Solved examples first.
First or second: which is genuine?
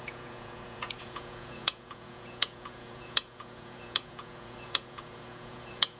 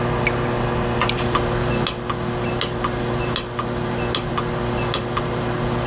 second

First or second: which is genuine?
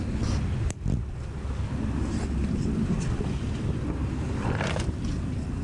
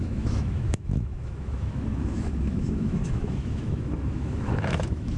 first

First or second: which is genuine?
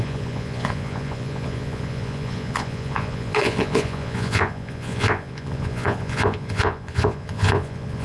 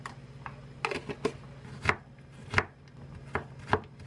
second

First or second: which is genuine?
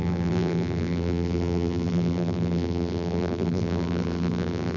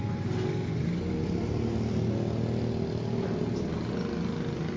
second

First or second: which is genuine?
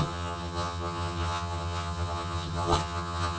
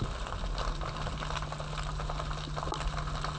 second